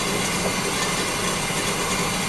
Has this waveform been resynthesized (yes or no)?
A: no